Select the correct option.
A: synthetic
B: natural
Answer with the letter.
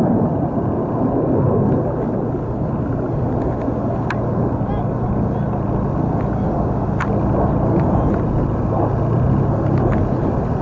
B